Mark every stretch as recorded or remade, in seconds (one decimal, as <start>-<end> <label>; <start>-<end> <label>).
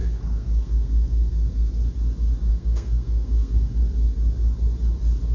0.0-1.7 remade; 1.7-2.5 recorded; 2.5-3.8 remade; 3.8-5.3 recorded